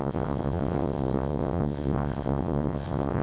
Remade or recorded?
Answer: remade